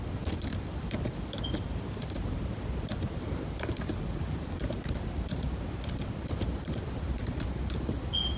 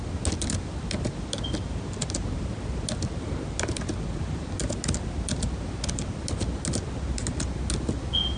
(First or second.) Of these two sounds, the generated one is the first